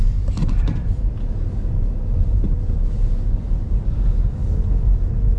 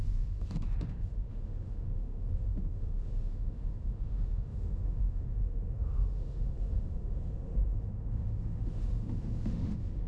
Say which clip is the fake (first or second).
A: second